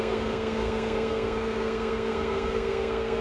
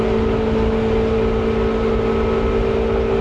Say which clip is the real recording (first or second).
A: second